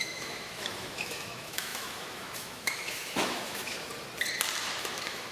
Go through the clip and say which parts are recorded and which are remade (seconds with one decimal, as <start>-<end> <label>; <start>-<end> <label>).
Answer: 0.0-3.9 remade; 3.9-4.8 recorded; 4.8-5.3 remade